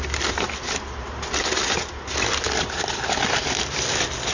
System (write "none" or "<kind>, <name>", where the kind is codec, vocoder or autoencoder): vocoder, BigVGAN v2